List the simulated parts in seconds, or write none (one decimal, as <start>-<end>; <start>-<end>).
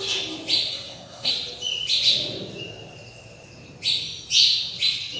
0.7-1.3